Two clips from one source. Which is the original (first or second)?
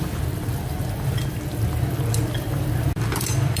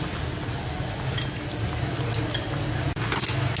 second